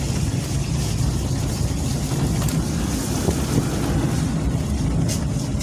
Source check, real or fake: real